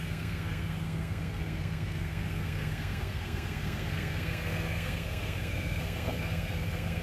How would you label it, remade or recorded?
remade